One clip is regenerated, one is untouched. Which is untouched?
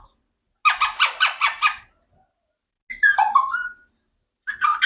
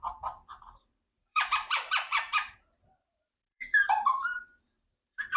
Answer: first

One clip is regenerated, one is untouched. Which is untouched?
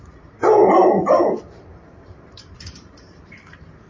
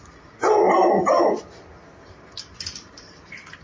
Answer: second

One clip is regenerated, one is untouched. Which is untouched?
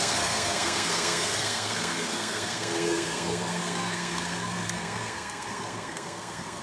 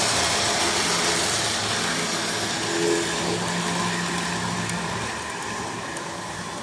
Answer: second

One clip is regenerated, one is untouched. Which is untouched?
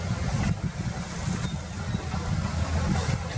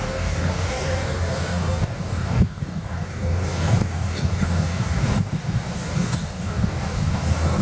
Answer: first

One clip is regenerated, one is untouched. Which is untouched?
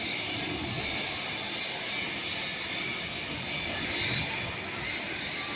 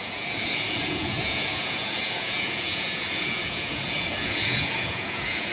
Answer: first